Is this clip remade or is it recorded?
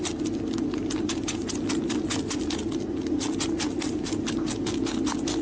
recorded